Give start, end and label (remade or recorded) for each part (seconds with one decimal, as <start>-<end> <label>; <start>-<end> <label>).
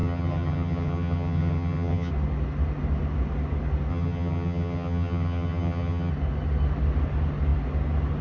0.0-2.1 remade; 2.1-3.9 recorded; 3.9-6.1 remade; 6.1-8.2 recorded